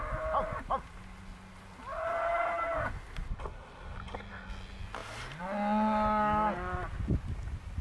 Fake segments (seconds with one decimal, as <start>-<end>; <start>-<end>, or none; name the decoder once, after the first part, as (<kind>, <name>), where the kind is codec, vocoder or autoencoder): none